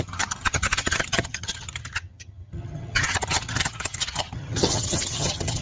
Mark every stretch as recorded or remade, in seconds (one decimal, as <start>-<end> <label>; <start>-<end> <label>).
0.0-5.6 remade